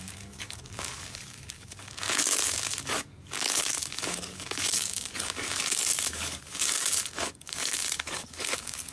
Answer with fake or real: fake